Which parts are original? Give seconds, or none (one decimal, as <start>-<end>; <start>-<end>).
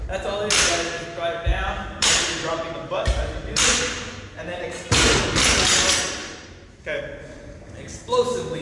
0.0-1.5; 5.2-6.2; 7.0-8.6